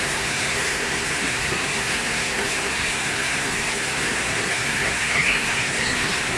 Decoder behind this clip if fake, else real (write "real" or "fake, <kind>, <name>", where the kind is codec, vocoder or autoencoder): fake, codec, SNAC